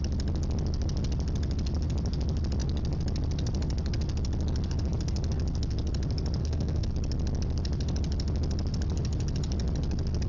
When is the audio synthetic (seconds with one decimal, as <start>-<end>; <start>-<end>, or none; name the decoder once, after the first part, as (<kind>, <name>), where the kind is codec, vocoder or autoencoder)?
6.4-6.9 (codec, SNAC)

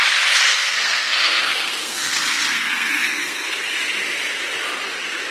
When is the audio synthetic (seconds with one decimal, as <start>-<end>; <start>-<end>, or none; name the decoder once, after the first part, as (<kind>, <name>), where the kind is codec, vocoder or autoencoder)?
0.5-3.7 (codec, SNAC)

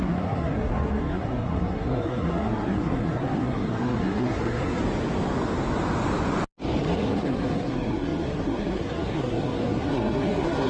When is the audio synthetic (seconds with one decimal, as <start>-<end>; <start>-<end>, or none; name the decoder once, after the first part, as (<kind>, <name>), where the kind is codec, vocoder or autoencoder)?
0.0-4.8 (codec, SNAC); 6.8-10.7

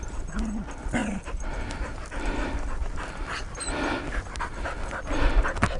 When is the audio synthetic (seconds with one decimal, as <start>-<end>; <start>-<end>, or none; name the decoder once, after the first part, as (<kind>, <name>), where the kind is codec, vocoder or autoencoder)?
none

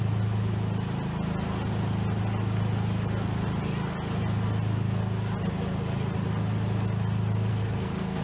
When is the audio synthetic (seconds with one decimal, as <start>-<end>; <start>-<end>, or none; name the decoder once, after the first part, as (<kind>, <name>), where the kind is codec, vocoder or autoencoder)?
7.5-8.2 (codec, SNAC)

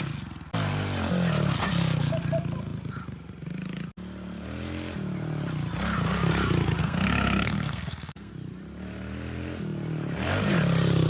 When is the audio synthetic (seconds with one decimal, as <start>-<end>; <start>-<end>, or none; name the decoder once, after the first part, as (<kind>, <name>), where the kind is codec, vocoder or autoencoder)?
6.8-8.3 (codec, SNAC)

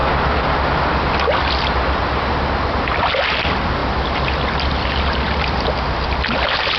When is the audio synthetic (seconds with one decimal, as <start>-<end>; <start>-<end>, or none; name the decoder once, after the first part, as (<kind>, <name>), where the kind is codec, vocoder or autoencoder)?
none